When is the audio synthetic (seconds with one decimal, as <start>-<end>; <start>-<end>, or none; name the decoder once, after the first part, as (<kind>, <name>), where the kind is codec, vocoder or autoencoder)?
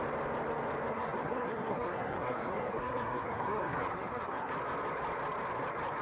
0.9-4.5 (codec, SNAC)